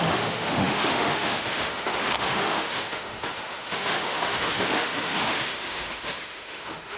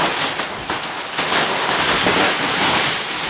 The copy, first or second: first